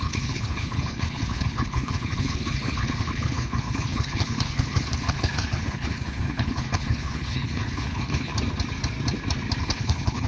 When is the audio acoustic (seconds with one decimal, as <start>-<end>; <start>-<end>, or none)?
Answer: 8.3-9.6